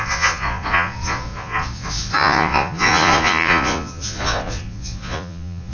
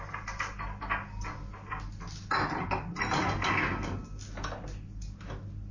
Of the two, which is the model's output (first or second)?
first